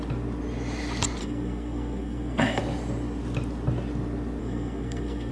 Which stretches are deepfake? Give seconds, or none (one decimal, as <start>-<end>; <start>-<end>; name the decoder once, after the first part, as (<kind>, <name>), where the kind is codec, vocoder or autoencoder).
1.2-2.6 (codec, SNAC); 4.4-5.3